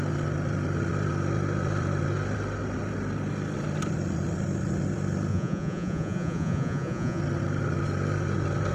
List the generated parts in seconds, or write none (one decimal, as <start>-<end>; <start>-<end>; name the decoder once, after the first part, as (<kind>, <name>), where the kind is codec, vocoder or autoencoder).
5.3-7.2 (vocoder, Vocos)

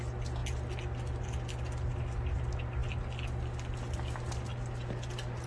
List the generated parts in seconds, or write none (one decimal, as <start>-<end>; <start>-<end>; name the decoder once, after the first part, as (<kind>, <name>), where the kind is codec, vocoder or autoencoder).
none